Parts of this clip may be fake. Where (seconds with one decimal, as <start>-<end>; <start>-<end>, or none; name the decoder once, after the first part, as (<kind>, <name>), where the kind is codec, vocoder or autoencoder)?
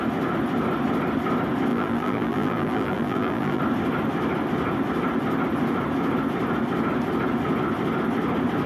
1.7-3.6 (vocoder, BigVGAN v2)